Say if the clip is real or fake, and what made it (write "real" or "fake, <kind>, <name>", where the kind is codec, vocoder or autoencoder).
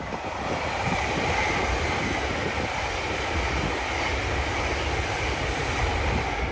real